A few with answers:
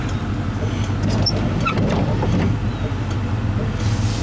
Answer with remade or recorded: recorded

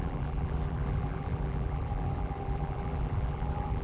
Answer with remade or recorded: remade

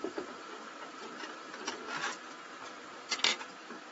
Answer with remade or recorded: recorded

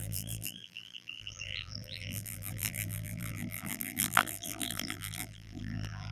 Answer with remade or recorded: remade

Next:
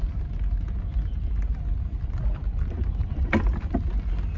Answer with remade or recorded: recorded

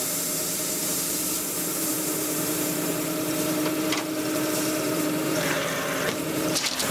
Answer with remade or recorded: remade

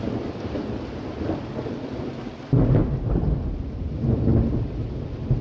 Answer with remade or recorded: recorded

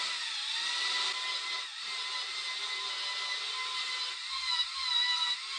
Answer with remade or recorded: recorded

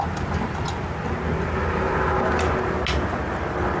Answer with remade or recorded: recorded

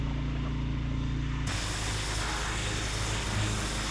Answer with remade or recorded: recorded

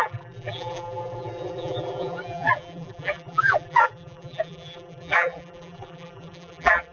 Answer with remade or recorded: remade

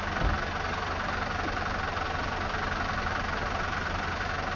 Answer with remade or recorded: recorded